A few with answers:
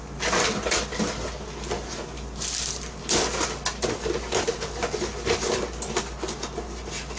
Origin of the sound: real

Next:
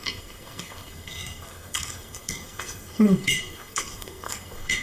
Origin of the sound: fake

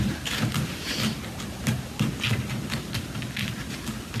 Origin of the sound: real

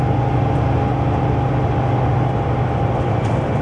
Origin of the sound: real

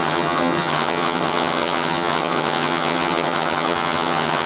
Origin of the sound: fake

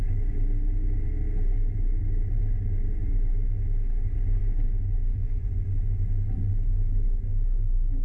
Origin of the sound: real